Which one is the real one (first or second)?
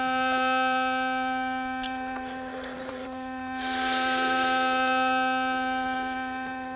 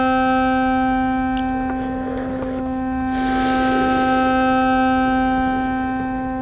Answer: second